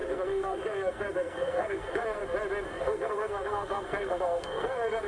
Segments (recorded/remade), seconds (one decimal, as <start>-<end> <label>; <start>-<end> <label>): 0.0-2.2 remade; 2.2-2.8 recorded; 2.8-5.1 remade